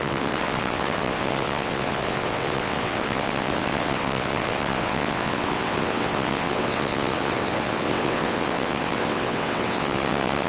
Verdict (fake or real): fake